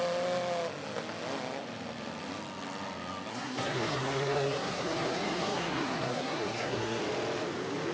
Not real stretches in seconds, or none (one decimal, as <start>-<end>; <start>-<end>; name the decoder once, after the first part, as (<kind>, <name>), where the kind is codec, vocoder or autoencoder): 3.3-7.0 (codec, SNAC)